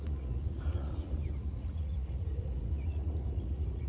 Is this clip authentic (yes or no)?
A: no